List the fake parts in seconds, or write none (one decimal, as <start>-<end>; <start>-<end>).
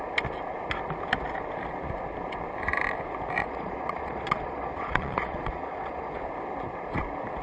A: 3.4-6.2